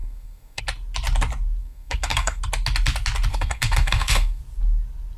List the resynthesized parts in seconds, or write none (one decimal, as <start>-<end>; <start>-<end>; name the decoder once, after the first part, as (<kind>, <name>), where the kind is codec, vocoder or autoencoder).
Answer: 0.0-0.6 (codec, SNAC); 1.6-2.4; 3.3-4.4